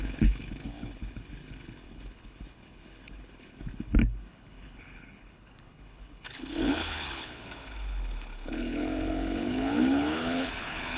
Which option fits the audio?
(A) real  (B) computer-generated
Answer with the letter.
B